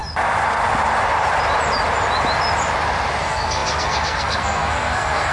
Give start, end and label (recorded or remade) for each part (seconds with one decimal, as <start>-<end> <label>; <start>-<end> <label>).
0.0-3.2 recorded; 3.2-5.3 remade